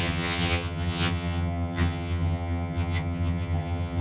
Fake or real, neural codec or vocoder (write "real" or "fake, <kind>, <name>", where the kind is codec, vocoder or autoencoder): fake, vocoder, HiFi-GAN